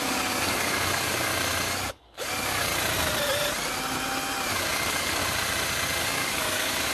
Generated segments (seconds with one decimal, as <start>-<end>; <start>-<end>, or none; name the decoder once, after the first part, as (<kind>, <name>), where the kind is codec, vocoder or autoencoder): 0.0-1.3 (codec, DAC); 1.9-2.7; 4.5-5.2; 6.0-6.9